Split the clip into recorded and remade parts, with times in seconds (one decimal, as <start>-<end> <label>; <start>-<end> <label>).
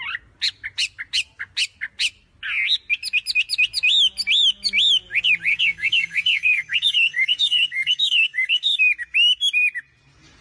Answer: 0.0-5.5 recorded; 5.5-8.8 remade; 8.8-10.4 recorded